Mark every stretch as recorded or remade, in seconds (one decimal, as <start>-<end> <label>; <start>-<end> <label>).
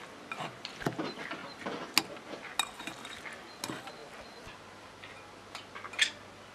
0.0-6.5 recorded